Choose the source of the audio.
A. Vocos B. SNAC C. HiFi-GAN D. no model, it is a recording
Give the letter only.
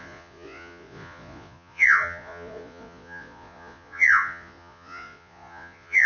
A